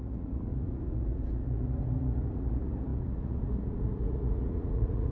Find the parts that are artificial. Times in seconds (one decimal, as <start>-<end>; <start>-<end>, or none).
0.0-5.1